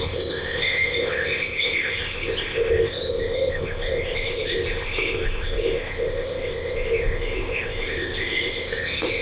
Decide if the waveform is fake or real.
fake